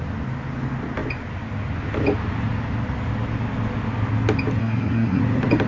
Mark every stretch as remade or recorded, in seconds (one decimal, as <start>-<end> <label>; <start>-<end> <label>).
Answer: 0.0-4.6 recorded; 4.6-5.2 remade; 5.2-5.7 recorded

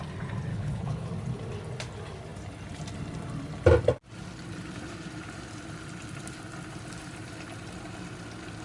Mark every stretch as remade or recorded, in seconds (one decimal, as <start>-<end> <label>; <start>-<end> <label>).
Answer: 0.0-0.5 recorded; 0.5-1.1 remade; 1.1-8.6 recorded

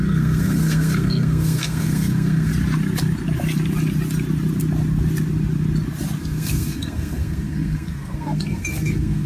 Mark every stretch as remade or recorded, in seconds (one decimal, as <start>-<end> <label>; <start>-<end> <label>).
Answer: 0.0-2.5 remade; 2.5-6.2 recorded; 6.2-9.3 remade

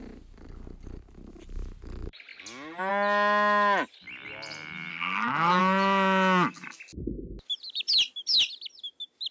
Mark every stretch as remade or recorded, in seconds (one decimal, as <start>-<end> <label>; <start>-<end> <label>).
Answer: 0.0-4.9 recorded; 4.9-5.6 remade; 5.6-9.3 recorded

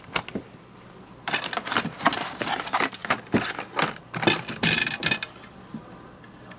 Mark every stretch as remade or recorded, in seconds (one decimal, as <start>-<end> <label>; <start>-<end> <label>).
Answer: 0.0-6.6 recorded

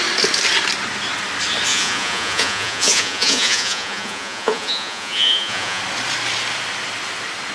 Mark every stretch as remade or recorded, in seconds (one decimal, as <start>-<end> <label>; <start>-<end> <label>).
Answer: 0.0-1.7 recorded; 1.7-5.8 remade; 5.8-7.5 recorded

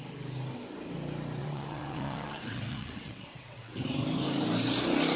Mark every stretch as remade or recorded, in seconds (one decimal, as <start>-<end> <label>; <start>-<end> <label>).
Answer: 0.0-1.4 recorded; 1.4-3.8 remade; 3.8-5.2 recorded

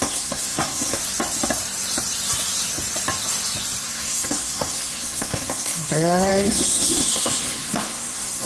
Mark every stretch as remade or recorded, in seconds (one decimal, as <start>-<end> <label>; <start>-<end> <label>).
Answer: 0.0-1.0 remade; 1.0-3.8 recorded; 3.8-8.5 remade